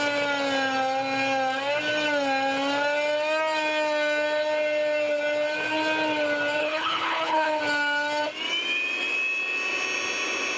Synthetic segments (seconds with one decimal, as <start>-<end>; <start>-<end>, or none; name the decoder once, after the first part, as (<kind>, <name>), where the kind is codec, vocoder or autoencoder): 6.6-7.6 (codec, HILCodec)